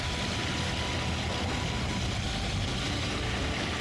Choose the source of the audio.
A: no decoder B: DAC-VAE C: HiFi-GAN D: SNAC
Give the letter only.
A